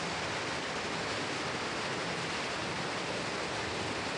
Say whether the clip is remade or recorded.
recorded